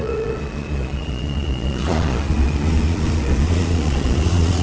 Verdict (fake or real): fake